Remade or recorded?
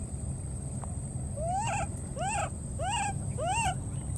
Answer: recorded